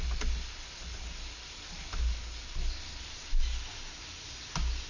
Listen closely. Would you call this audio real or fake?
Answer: real